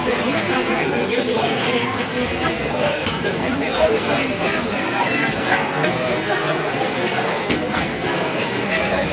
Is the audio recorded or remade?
remade